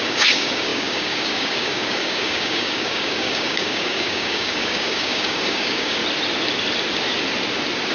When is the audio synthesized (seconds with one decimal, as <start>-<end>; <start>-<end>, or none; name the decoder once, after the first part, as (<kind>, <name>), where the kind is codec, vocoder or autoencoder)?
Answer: 0.0-6.0 (codec, DAC)